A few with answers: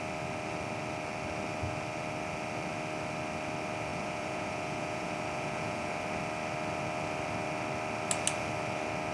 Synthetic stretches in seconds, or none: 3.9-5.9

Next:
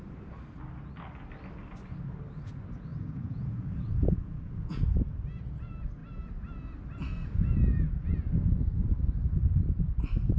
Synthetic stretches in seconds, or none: 2.9-5.2

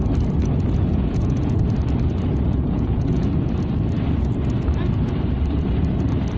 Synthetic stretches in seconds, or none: 0.9-1.6; 2.5-3.3

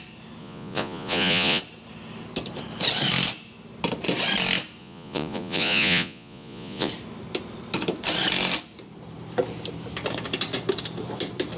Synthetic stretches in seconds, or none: 0.4-1.6; 4.8-6.9

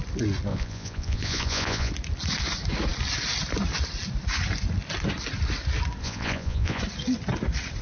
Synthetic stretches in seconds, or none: 0.5-1.9; 6.0-6.8

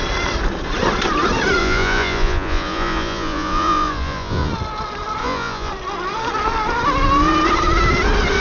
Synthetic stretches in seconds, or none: 1.6-4.5; 5.2-5.7